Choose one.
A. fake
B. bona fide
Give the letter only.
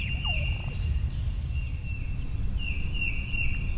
B